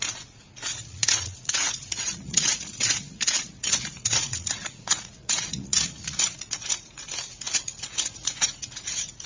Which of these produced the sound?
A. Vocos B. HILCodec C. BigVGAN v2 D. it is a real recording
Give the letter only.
A